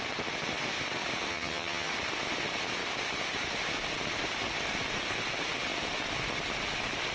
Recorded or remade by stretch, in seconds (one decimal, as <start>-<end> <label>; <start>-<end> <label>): 0.0-1.3 recorded; 1.3-1.9 remade; 1.9-7.1 recorded